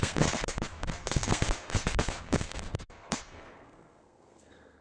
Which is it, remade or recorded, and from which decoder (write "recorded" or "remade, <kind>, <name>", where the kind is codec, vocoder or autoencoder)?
remade, codec, SNAC